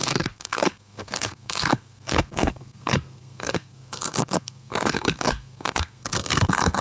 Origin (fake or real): fake